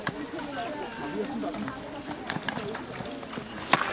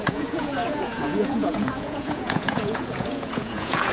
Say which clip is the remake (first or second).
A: second